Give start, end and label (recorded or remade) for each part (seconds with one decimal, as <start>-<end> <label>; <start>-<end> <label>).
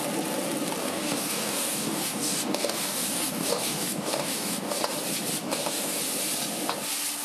0.0-0.8 recorded; 0.8-4.8 remade; 4.8-5.4 recorded; 5.4-6.0 remade; 6.0-7.2 recorded